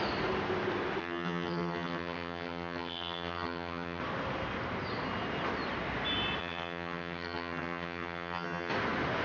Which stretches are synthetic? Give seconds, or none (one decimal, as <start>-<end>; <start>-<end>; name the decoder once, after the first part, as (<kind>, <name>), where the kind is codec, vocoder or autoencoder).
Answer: 1.0-4.0 (vocoder, HiFi-GAN); 6.4-8.7